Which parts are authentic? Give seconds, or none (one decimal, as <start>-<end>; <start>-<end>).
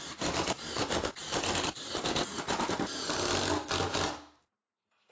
0.0-5.1